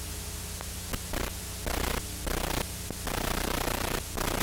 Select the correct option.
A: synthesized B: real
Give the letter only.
B